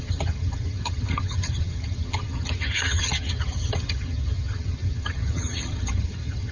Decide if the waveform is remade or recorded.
remade